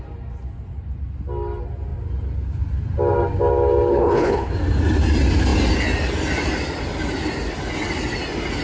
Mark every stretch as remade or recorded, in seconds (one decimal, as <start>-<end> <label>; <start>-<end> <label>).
0.0-3.9 recorded; 3.9-4.5 remade; 4.5-8.6 recorded